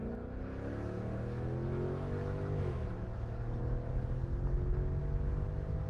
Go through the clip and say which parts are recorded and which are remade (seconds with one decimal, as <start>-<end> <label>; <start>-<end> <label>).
0.0-0.7 recorded; 0.7-3.9 remade; 3.9-5.0 recorded; 5.0-5.9 remade